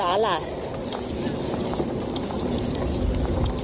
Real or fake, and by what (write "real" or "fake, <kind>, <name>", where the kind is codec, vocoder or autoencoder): real